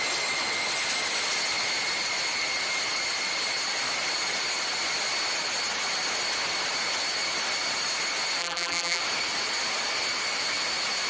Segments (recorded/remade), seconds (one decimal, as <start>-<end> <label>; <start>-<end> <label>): 0.0-8.4 recorded; 8.4-9.0 remade; 9.0-11.1 recorded

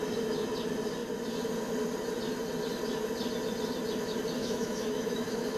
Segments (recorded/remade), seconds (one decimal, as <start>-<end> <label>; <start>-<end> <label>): 0.0-4.4 recorded; 4.4-5.6 remade

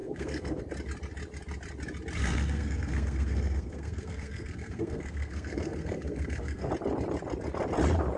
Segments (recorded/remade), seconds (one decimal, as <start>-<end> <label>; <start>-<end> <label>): 0.0-0.6 remade; 0.6-2.2 recorded; 2.2-6.7 remade; 6.7-8.2 recorded

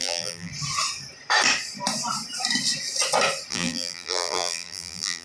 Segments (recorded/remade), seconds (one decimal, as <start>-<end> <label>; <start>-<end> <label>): 0.0-0.5 remade; 0.5-3.5 recorded; 3.5-5.2 remade

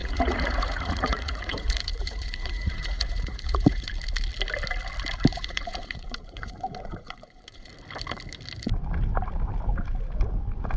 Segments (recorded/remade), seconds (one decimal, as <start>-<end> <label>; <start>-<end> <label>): 0.0-3.9 remade; 3.9-5.3 recorded; 5.3-7.7 remade; 7.7-10.8 recorded

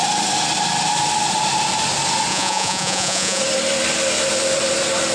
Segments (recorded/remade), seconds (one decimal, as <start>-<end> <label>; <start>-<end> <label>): 0.0-2.3 recorded; 2.3-3.4 remade; 3.4-5.1 recorded

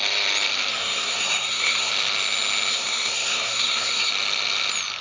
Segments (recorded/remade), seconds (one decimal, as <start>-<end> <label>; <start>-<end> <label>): 0.0-0.7 recorded; 0.7-1.9 remade; 1.9-2.7 recorded; 2.7-4.1 remade; 4.1-5.0 recorded

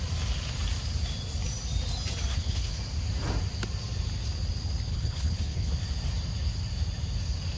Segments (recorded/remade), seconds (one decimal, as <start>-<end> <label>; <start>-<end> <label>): 0.0-2.3 recorded; 2.3-2.8 remade; 2.8-4.9 recorded; 4.9-5.7 remade; 5.7-7.6 recorded